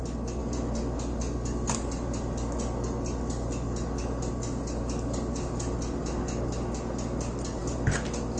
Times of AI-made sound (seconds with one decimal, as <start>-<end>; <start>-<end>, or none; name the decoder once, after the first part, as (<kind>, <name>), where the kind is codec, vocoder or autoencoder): none